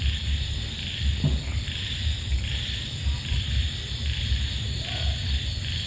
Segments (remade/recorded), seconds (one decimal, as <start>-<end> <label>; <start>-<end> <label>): 0.0-1.5 recorded; 1.5-5.0 remade; 5.0-5.9 recorded